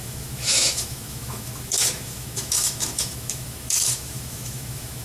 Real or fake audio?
fake